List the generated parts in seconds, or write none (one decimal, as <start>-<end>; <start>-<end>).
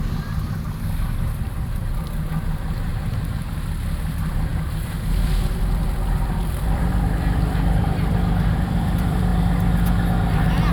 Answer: 0.0-9.3